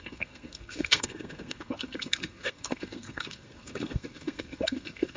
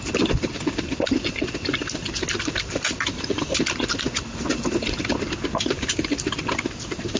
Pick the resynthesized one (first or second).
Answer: first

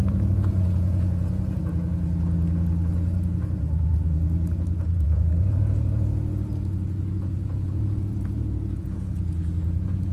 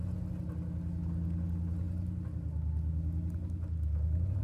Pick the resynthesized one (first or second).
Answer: first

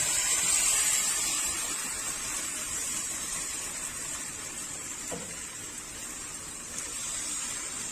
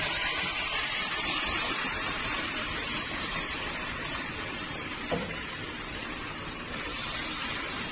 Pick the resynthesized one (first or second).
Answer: second